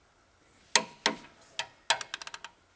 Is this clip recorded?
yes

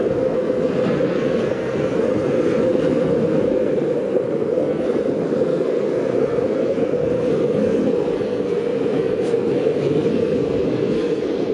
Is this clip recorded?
no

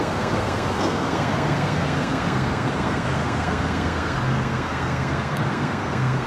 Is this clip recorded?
no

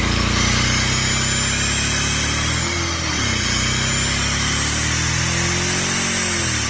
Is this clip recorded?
yes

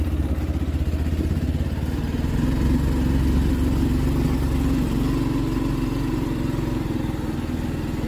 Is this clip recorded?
yes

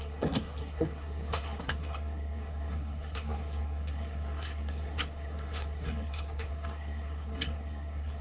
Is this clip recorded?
no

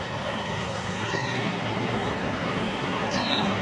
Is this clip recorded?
no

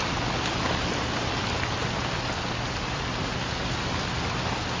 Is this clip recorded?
yes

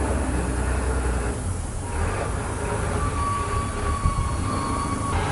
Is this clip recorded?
yes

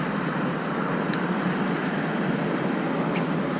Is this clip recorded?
yes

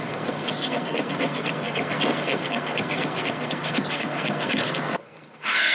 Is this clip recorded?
no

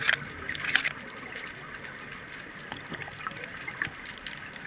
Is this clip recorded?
yes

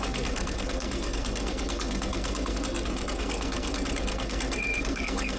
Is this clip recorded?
no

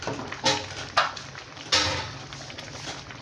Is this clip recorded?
yes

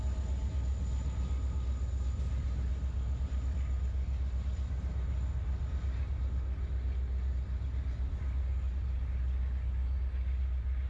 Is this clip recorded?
yes